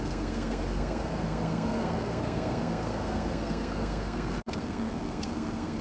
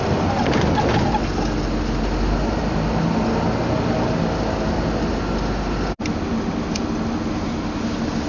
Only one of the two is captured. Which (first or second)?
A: second